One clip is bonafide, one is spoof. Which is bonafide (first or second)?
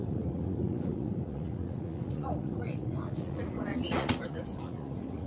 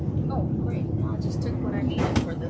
second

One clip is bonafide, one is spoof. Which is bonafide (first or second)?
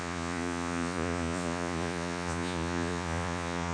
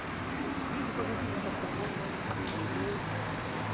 second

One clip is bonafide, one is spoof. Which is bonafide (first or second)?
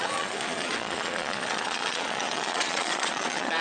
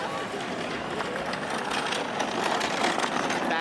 second